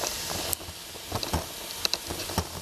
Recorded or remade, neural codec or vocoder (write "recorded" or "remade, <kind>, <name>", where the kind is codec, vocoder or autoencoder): recorded